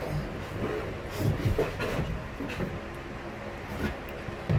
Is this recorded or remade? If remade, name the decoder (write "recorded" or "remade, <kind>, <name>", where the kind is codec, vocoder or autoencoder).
recorded